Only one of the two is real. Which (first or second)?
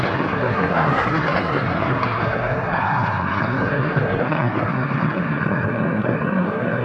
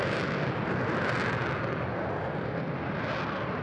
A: second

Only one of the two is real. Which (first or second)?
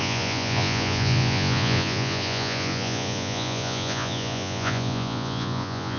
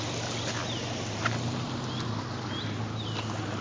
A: second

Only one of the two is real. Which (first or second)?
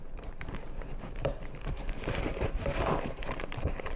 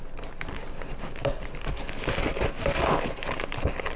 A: second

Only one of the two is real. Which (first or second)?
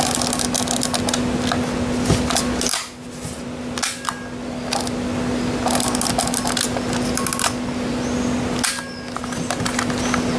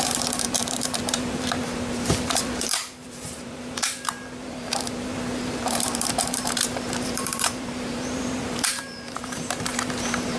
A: first